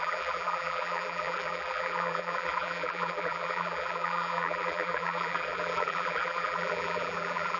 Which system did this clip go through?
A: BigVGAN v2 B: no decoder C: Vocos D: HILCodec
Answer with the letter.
A